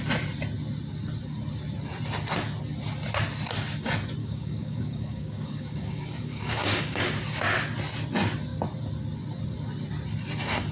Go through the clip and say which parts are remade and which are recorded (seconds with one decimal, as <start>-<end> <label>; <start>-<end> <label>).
0.0-4.2 recorded; 4.2-7.0 remade; 7.0-10.7 recorded